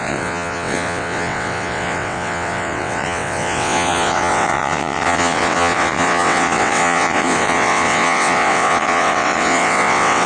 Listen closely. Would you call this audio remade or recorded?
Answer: remade